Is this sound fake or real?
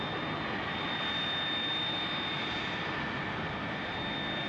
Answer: real